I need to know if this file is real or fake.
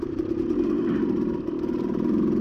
fake